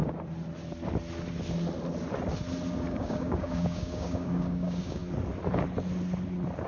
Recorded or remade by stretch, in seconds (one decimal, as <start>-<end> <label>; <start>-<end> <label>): 0.0-2.9 recorded; 2.9-5.0 remade; 5.0-6.7 recorded